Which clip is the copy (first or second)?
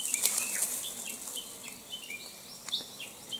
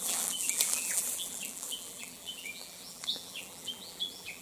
second